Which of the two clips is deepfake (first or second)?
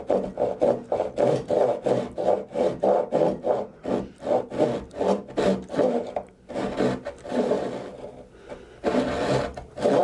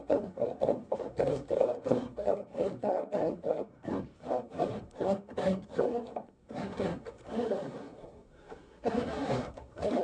second